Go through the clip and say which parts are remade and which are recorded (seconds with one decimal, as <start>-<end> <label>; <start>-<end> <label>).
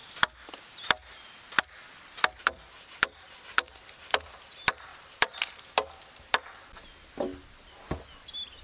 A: 0.0-1.6 remade; 1.6-4.9 recorded; 4.9-5.5 remade; 5.5-7.3 recorded; 7.3-7.8 remade; 7.8-8.6 recorded